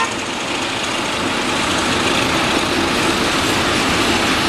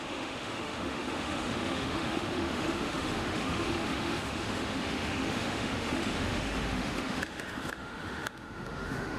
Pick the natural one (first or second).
first